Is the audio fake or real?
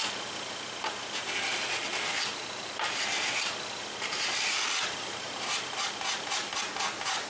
real